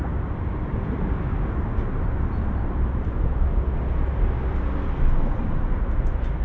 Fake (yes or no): no